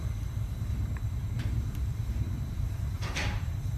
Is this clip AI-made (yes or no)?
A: yes